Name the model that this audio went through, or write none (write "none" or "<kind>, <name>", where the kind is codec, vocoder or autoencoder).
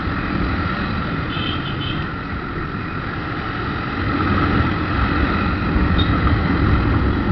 none